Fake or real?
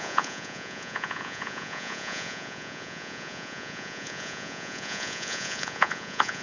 fake